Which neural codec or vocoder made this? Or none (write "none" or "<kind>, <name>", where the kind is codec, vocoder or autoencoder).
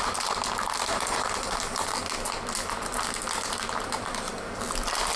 none